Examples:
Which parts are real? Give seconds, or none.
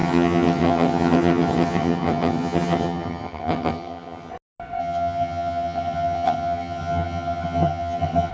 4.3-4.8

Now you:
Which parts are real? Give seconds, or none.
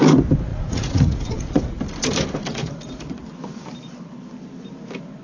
0.0-0.5; 1.8-2.5; 3.2-5.2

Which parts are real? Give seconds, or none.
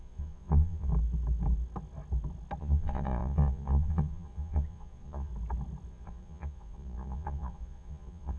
0.9-2.6; 5.3-5.9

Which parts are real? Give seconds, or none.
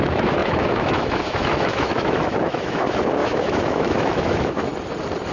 4.7-5.3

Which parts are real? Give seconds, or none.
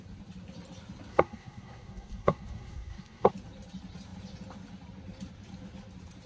0.0-1.1; 3.3-6.3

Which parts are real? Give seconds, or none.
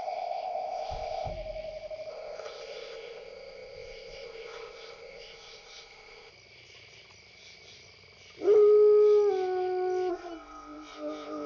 1.3-2.1; 6.3-10.1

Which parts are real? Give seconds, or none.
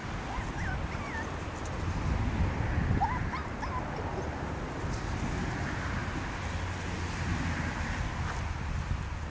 0.0-9.3